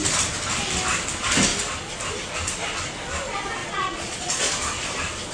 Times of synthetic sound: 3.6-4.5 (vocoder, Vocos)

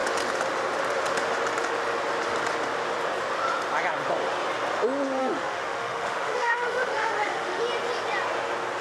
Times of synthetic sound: 5.2-7.6 (autoencoder, DAC-VAE)

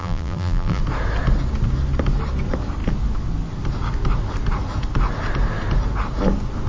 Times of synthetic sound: 0.0-0.8 (vocoder, BigVGAN v2)

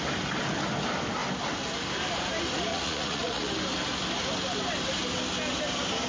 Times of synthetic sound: 2.7-3.5 (vocoder, Vocos)

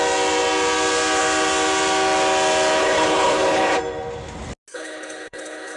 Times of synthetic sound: 2.8-3.8 (codec, HILCodec); 4.7-5.8

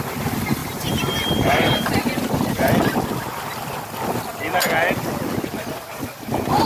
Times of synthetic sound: 0.6-2.7 (vocoder, BigVGAN v2)

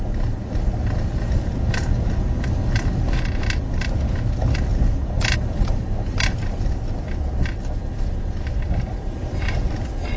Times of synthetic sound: 4.7-10.2 (vocoder, BigVGAN v2)

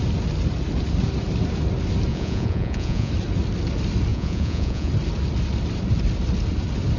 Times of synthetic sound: 2.1-3.1 (vocoder, Vocos); 4.1-4.9